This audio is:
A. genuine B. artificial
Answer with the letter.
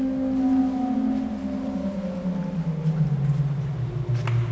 A